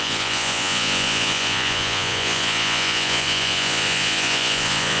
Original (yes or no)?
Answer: no